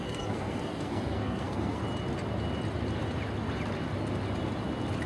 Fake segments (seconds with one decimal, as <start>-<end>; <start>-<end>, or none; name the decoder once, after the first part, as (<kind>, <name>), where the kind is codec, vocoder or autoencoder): 0.0-1.8 (codec, SNAC)